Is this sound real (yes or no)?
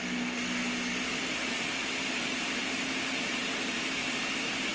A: yes